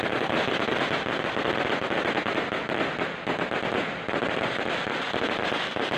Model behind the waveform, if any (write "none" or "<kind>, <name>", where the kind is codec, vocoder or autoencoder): none